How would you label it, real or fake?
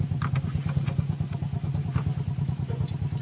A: real